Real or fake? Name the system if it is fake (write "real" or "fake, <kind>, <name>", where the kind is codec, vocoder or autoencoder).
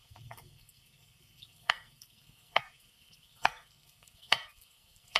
fake, codec, SNAC